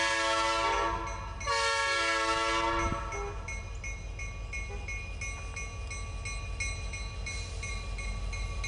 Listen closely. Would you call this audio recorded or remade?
recorded